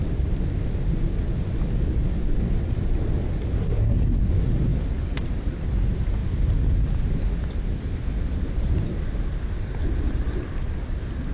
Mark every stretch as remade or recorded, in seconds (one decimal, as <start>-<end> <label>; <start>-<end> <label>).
0.0-3.6 recorded; 3.6-4.3 remade; 4.3-11.3 recorded